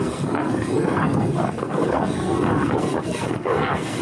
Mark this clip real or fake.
fake